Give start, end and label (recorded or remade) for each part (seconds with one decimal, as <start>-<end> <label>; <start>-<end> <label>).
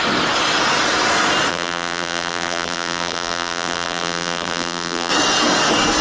0.0-1.5 recorded; 1.5-5.1 remade; 5.1-6.0 recorded